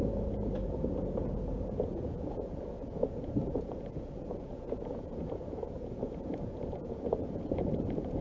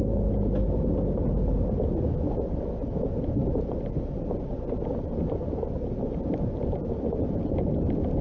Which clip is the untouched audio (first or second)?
second